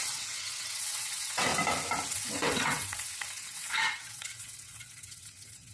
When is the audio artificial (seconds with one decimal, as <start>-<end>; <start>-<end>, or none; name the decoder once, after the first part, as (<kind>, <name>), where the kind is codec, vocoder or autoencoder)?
0.0-1.5 (vocoder, WaveNeXt); 2.1-5.7